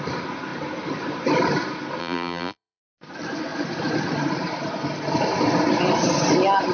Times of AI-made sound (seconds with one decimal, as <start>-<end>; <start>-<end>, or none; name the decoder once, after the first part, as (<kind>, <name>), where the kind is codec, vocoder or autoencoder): 2.0-2.8 (vocoder, BigVGAN v2)